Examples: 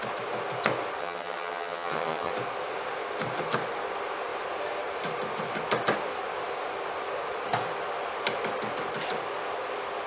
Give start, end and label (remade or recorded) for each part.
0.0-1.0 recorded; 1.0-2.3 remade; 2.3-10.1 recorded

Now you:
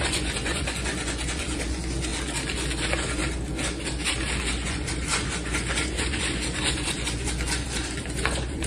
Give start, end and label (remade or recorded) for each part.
0.0-2.1 remade; 2.1-2.8 recorded; 2.8-3.2 remade; 3.2-4.5 recorded; 4.5-8.7 remade

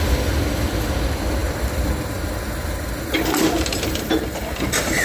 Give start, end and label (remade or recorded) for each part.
0.0-5.0 recorded

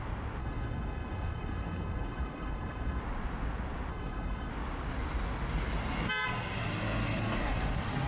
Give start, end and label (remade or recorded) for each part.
0.0-0.4 recorded; 0.4-3.0 remade; 3.0-3.9 recorded; 3.9-4.5 remade; 4.5-8.1 recorded

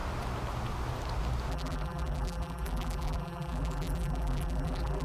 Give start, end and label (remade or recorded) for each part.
0.0-1.5 recorded; 1.5-5.0 remade